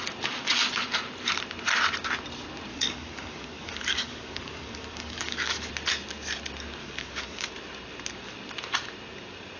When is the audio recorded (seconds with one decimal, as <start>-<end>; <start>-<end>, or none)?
0.0-2.7; 5.7-6.8; 7.5-9.6